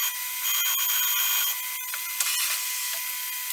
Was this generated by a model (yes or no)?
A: no